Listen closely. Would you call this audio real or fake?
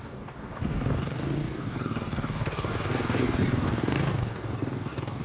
fake